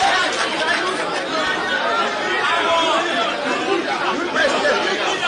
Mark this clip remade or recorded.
recorded